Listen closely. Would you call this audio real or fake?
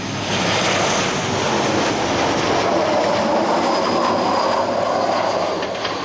real